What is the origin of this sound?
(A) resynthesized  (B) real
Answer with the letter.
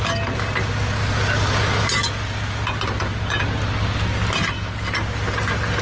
B